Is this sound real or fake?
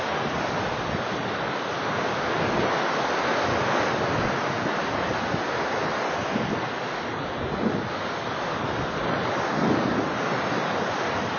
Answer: real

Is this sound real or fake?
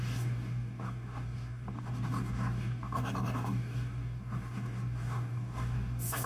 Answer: fake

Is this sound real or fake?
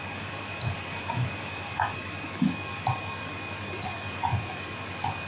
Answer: fake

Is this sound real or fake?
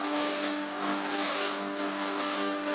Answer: fake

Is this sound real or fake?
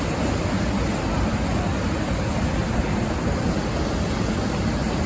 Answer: real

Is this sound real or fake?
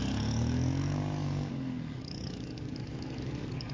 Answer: fake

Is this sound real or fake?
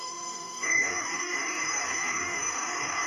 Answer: fake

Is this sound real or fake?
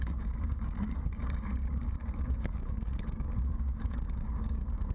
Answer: fake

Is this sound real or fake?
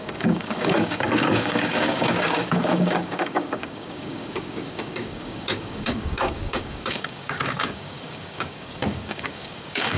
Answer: fake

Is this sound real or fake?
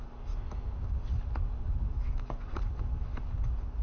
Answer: real